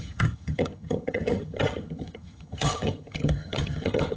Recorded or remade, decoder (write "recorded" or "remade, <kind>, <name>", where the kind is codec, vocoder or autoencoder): remade, vocoder, HiFi-GAN